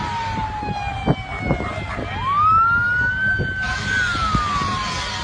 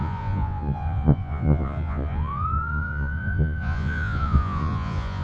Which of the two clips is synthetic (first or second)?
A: second